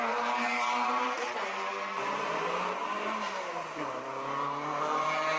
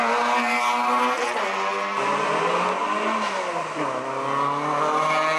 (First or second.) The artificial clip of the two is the first